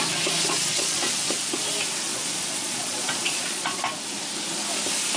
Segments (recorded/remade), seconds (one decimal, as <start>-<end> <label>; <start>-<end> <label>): 0.0-0.7 recorded; 0.7-1.5 remade; 1.5-2.1 recorded; 2.1-3.8 remade; 3.8-5.2 recorded